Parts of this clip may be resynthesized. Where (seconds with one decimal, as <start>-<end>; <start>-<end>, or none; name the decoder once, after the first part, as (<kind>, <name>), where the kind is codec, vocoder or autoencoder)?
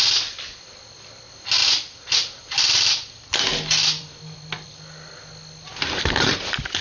1.6-3.3 (vocoder, BigVGAN v2)